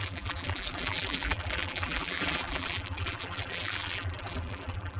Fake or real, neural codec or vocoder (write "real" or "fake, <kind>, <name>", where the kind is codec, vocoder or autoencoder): fake, vocoder, BigVGAN v2